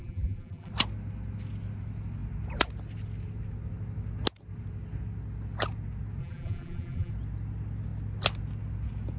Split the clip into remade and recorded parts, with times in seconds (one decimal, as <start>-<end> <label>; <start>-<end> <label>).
0.0-0.7 remade; 0.7-6.2 recorded; 6.2-7.1 remade; 7.1-9.2 recorded